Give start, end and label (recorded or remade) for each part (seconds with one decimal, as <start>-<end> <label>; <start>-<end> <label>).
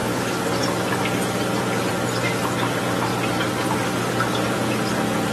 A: 0.0-5.3 recorded